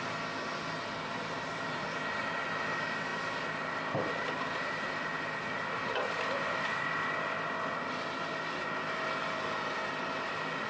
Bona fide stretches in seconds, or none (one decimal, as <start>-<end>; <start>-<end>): 0.0-10.7

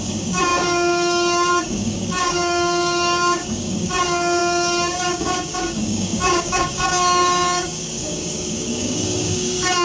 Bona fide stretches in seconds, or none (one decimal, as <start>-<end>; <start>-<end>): none

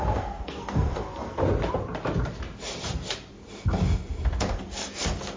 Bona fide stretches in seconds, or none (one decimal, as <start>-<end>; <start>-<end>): 1.4-4.4

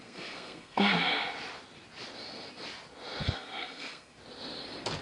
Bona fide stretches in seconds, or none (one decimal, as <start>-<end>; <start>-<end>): 1.2-3.2; 4.1-5.0

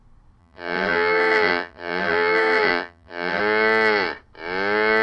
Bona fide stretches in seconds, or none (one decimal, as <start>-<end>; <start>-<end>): 0.0-0.4; 3.4-5.0